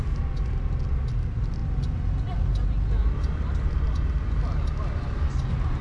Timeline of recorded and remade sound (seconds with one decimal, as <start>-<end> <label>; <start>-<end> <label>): 0.0-5.8 recorded